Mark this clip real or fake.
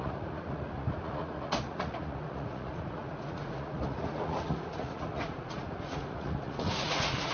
fake